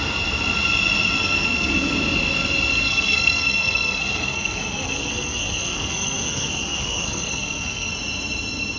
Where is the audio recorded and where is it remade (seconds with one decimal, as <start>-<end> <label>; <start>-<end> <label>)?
0.0-1.2 recorded; 1.2-1.9 remade; 1.9-2.7 recorded; 2.7-7.9 remade; 7.9-8.8 recorded